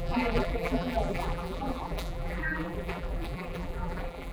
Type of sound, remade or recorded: remade